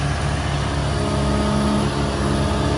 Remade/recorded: recorded